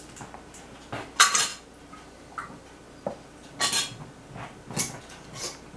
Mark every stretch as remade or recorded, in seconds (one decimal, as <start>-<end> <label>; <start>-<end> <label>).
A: 0.0-5.8 recorded